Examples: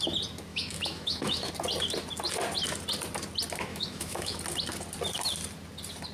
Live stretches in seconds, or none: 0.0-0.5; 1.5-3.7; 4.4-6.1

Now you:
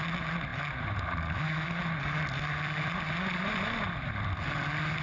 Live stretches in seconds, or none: 0.0-5.0